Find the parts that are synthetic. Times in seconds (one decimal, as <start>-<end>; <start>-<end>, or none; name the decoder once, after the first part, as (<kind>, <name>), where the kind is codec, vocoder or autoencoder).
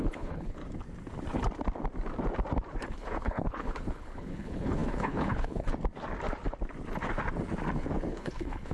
0.0-0.6 (codec, HILCodec); 2.9-5.7; 8.1-8.7